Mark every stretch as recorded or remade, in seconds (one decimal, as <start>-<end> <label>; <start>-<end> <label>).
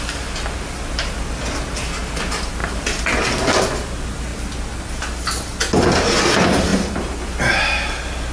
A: 0.0-2.6 recorded; 2.6-3.6 remade; 3.6-8.3 recorded